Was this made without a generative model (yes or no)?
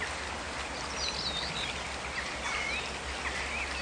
yes